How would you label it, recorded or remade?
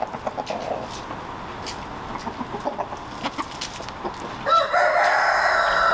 recorded